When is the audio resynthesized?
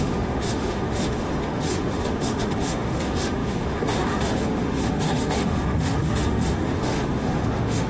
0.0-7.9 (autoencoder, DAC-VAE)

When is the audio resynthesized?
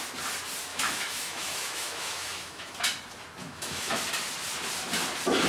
0.7-2.7 (autoencoder, DAC-VAE); 3.4-4.0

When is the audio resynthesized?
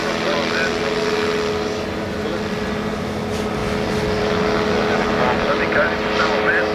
none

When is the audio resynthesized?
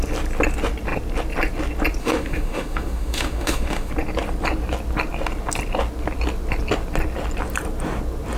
2.0-3.9 (autoencoder, DAC-VAE)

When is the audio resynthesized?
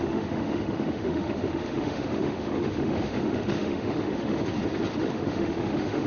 0.0-4.4 (autoencoder, DAC-VAE); 5.0-6.1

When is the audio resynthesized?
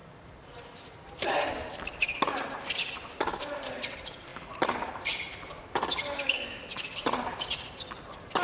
none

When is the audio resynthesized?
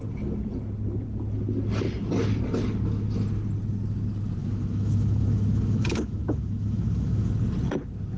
4.4-7.3 (autoencoder, DAC-VAE)